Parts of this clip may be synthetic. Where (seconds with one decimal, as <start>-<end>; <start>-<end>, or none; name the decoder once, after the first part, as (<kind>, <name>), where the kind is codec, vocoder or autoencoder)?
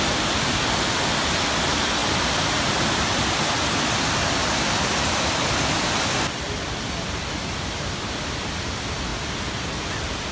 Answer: 0.0-9.1 (vocoder, BigVGAN v2); 9.8-10.3